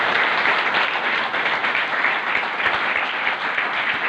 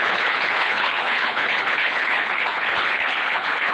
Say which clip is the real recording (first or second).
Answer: first